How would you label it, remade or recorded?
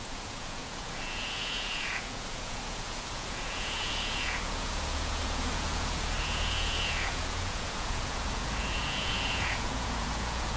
remade